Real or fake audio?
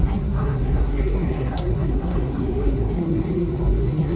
fake